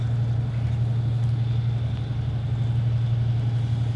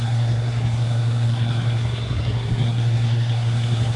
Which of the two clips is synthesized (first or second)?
second